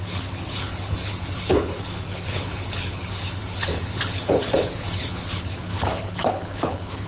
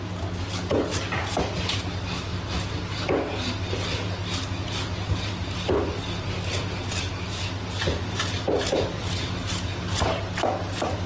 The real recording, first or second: second